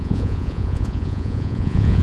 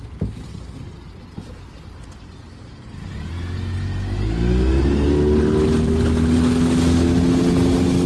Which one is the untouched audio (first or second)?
second